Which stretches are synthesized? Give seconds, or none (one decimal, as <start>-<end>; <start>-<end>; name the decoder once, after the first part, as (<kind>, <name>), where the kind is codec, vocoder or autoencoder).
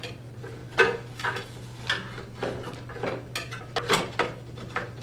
none